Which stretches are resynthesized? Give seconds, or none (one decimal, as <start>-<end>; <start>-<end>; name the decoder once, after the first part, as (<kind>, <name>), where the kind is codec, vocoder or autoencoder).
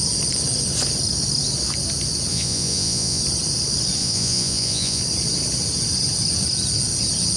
2.3-3.2 (vocoder, Vocos); 4.0-5.0